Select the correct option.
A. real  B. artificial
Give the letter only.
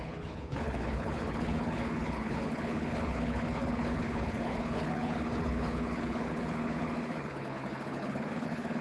B